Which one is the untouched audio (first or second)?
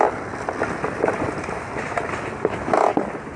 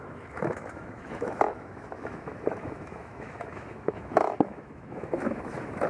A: first